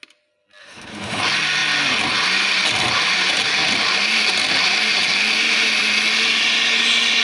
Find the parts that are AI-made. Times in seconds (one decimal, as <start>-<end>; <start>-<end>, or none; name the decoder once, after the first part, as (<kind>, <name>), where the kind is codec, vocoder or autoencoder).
0.6-1.2 (autoencoder, DAC-VAE)